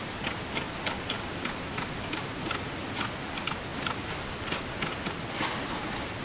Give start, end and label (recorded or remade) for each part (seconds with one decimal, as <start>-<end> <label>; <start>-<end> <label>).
0.0-6.2 recorded